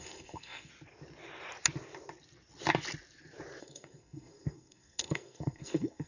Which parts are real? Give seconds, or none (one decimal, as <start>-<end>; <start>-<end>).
0.7-3.6